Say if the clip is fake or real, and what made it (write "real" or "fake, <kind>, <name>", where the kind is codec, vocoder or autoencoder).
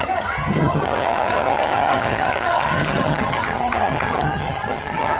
fake, vocoder, HiFi-GAN